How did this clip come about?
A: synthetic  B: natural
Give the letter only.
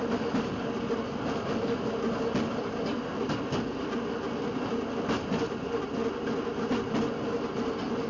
B